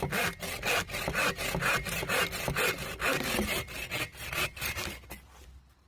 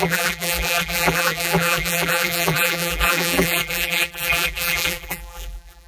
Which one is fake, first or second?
second